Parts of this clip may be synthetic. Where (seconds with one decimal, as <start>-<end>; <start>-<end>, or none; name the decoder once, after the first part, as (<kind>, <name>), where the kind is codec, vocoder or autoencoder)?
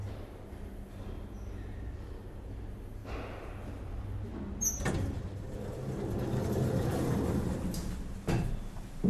none